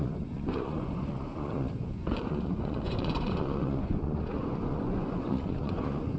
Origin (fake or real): fake